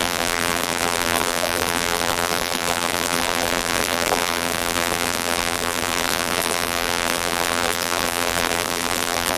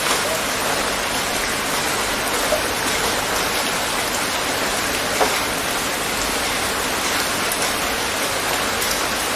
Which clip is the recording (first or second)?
second